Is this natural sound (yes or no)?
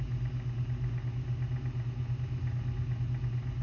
yes